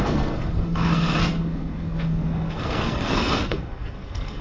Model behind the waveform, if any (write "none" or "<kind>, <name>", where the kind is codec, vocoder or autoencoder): codec, SNAC